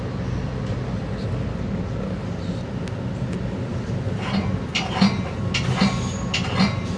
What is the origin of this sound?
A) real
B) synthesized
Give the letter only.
A